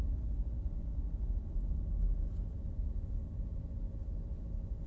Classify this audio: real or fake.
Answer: real